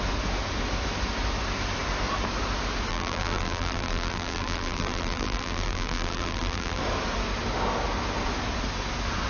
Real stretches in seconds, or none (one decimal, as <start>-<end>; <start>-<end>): 0.0-2.9; 6.8-9.3